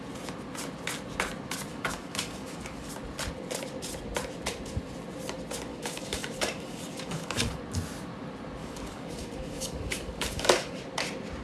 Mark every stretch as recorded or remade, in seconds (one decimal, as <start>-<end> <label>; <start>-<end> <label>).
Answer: 0.0-1.7 recorded; 1.7-2.9 remade; 2.9-5.7 recorded; 5.7-7.6 remade; 7.6-8.6 recorded; 8.6-10.8 remade; 10.8-11.4 recorded